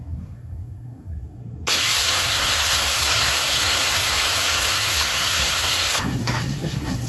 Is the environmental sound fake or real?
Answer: fake